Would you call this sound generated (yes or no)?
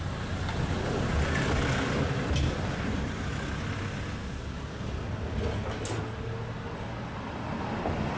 no